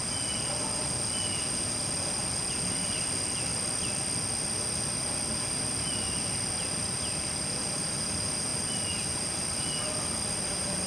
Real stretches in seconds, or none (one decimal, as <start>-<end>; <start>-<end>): 0.0-10.9